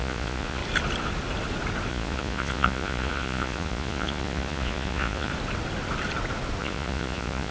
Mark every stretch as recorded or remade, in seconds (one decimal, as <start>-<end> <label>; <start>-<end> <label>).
0.0-0.6 remade; 0.6-1.9 recorded; 1.9-5.3 remade; 5.3-6.6 recorded; 6.6-7.5 remade